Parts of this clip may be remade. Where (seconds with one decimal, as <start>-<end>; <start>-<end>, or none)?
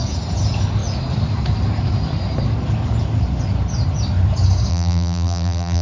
4.7-5.8